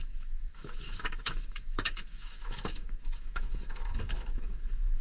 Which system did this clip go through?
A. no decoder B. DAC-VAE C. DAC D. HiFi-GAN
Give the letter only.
B